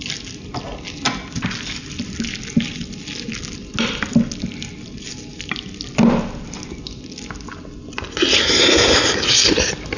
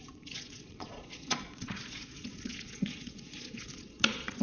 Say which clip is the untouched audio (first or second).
first